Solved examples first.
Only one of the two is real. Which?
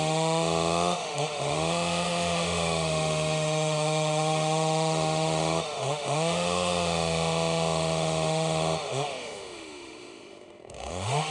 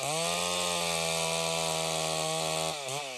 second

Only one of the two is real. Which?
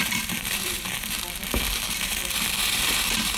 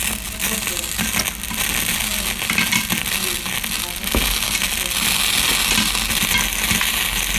second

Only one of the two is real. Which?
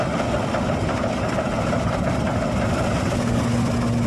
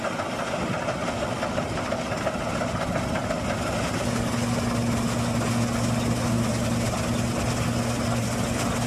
second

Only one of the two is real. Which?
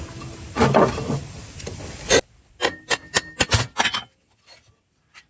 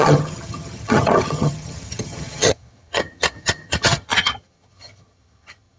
first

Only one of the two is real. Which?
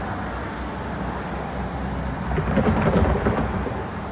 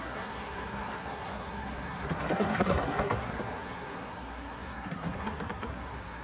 first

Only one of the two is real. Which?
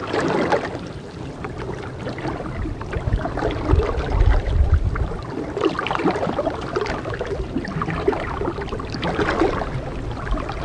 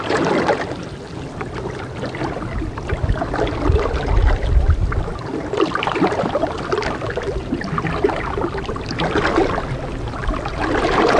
second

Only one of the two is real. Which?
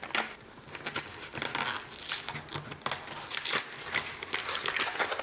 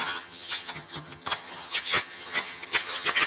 first